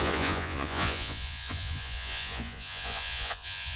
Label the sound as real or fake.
fake